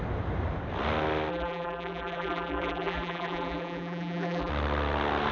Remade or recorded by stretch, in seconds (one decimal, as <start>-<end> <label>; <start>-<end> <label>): 0.0-1.3 recorded; 1.3-4.5 remade; 4.5-5.3 recorded